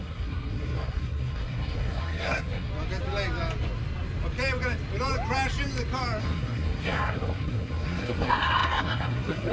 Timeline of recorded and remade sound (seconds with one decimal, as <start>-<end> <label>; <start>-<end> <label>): 0.0-2.7 remade; 2.7-6.2 recorded; 6.2-9.5 remade